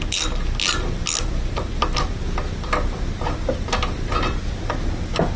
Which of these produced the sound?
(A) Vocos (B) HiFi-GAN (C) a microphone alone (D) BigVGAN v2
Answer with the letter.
C